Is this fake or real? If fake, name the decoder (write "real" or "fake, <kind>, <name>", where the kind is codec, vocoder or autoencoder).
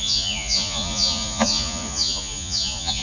fake, vocoder, Vocos